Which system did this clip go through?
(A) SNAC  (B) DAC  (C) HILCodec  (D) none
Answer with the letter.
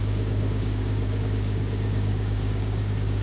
B